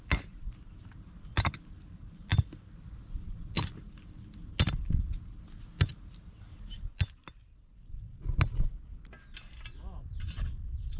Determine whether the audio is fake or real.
real